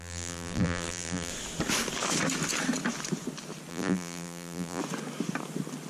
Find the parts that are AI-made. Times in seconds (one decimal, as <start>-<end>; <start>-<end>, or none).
0.0-1.3; 3.7-4.8